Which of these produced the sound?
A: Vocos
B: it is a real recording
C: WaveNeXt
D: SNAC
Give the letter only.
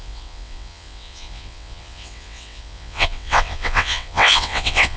C